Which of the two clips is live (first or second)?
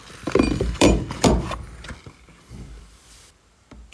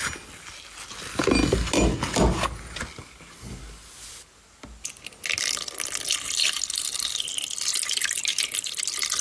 second